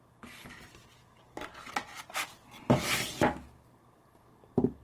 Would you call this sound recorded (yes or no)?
yes